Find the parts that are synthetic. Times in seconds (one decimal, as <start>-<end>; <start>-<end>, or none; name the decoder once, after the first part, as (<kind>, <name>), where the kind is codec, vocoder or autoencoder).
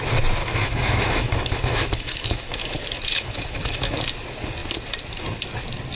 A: 0.4-4.0 (autoencoder, DAC-VAE)